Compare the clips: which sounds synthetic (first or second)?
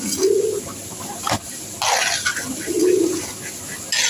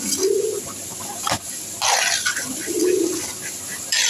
second